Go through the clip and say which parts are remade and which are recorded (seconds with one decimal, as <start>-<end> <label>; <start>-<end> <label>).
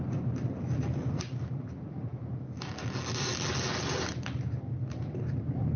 0.0-5.8 recorded